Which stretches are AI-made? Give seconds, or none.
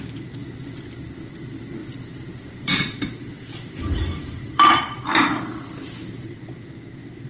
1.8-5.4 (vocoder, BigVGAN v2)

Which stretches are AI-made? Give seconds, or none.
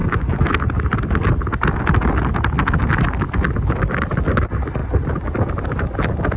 none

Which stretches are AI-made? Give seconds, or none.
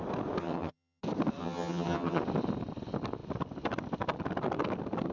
0.4-1.0 (vocoder, HiFi-GAN); 1.4-2.2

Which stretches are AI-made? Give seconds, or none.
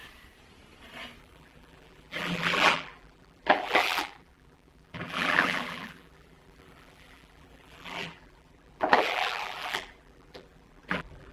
1.2-11.3 (vocoder, BigVGAN v2)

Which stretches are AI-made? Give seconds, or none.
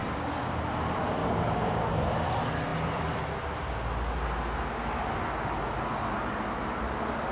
0.0-0.6 (codec, DAC); 1.2-1.9